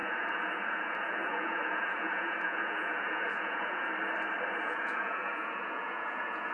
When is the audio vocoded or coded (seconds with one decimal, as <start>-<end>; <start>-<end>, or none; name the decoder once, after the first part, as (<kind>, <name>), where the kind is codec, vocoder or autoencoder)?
0.0-3.9 (vocoder, Vocos); 4.5-6.5